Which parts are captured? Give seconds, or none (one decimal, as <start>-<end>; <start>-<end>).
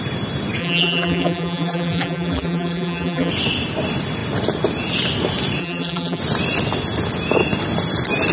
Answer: 0.0-0.6; 3.3-5.6; 6.2-8.3